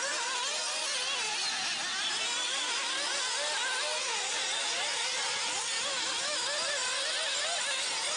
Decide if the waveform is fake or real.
real